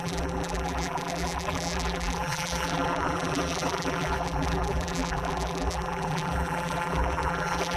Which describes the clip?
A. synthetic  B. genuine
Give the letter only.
A